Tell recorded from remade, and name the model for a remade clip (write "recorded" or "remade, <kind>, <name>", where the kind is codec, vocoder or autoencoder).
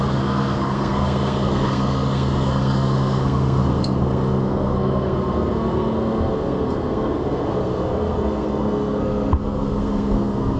remade, codec, SNAC